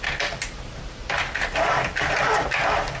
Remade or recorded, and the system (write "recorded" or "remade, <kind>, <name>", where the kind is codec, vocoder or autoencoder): recorded